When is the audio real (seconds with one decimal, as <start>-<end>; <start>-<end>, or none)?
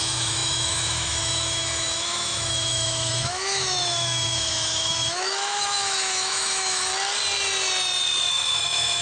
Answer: 6.9-8.3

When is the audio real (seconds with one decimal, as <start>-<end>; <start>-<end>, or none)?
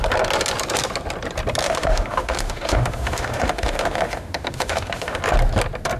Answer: 0.0-1.6; 5.2-6.0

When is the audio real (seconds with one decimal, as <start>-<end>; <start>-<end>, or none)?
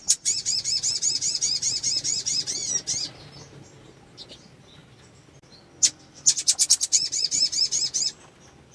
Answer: 0.0-8.7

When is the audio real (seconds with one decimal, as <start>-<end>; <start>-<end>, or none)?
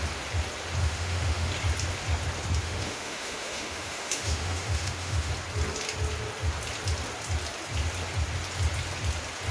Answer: 0.0-0.8; 1.5-2.6; 5.3-9.5